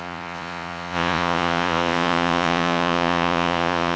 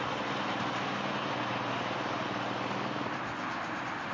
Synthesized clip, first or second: first